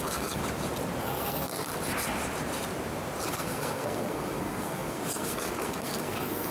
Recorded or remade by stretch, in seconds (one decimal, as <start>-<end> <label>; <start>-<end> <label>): 0.0-0.4 remade; 0.4-1.0 recorded; 1.0-1.7 remade; 1.7-3.3 recorded; 3.3-6.5 remade

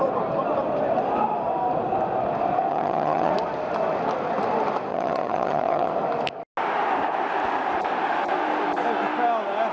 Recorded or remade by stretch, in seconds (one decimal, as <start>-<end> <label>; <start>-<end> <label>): 0.0-2.7 recorded; 2.7-3.3 remade; 3.3-4.9 recorded; 4.9-5.9 remade; 5.9-9.7 recorded

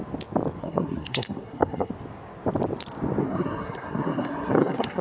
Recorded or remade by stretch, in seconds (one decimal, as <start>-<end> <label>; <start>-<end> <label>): 0.0-0.6 recorded; 0.6-1.9 remade; 1.9-3.2 recorded; 3.2-5.0 remade

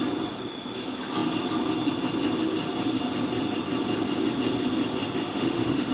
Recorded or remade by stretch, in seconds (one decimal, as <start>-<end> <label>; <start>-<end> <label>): 0.0-5.3 recorded; 5.3-5.9 remade

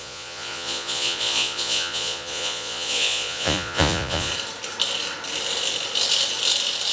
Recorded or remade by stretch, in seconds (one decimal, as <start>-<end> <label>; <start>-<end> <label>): 0.0-4.3 remade; 4.3-6.9 recorded

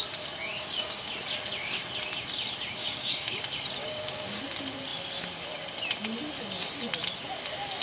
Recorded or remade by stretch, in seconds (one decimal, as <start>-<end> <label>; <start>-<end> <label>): 0.0-0.5 recorded; 0.5-1.1 remade; 1.1-2.8 recorded; 2.8-3.4 remade; 3.4-3.8 recorded; 3.8-4.4 remade; 4.4-7.8 recorded